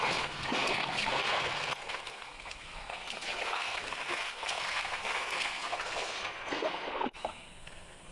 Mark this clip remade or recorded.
remade